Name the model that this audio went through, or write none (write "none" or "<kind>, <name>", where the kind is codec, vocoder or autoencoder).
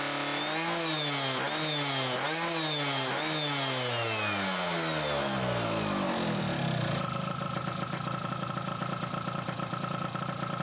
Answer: none